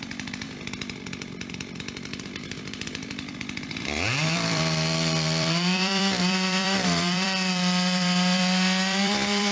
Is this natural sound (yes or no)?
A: no